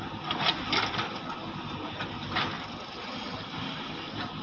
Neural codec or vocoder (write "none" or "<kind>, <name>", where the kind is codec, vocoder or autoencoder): none